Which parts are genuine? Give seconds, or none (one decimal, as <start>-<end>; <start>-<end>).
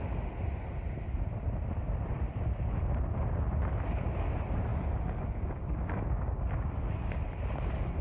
0.0-4.7; 7.2-8.0